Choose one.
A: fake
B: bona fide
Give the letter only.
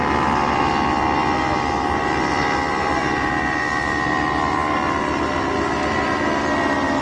B